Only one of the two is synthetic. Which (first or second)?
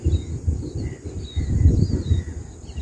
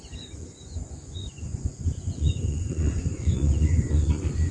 second